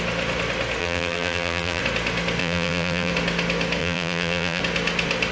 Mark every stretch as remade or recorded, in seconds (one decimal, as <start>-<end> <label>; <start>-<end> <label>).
0.0-0.8 recorded; 0.8-1.8 remade; 1.8-2.4 recorded; 2.4-3.1 remade; 3.1-3.8 recorded; 3.8-4.6 remade; 4.6-5.3 recorded

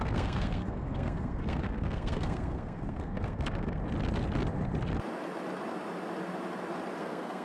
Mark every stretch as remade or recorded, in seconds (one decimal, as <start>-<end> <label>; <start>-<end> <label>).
0.0-3.8 remade; 3.8-7.0 recorded; 7.0-7.4 remade

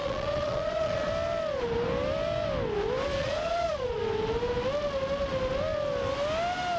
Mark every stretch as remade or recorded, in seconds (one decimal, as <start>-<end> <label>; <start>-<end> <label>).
0.0-1.1 remade; 1.1-3.2 recorded; 3.2-4.0 remade; 4.0-6.8 recorded

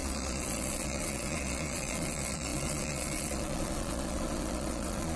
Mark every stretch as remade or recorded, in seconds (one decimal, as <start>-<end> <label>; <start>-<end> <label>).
0.0-5.2 remade

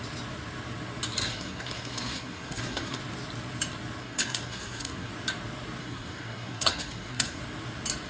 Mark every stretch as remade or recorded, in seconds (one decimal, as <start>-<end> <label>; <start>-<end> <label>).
0.0-1.2 recorded; 1.2-3.0 remade; 3.0-4.0 recorded; 4.0-5.1 remade; 5.1-5.8 recorded; 5.8-7.4 remade; 7.4-8.1 recorded

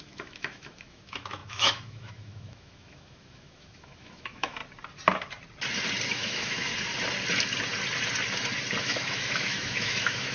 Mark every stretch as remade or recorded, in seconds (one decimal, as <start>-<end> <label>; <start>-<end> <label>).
0.0-4.6 remade; 4.6-6.1 recorded; 6.1-6.7 remade; 6.7-8.8 recorded; 8.8-10.3 remade

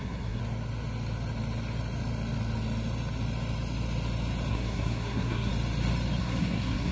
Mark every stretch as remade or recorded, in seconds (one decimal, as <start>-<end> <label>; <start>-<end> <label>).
0.0-0.4 remade; 0.4-4.5 recorded; 4.5-5.5 remade; 5.5-6.2 recorded; 6.2-6.9 remade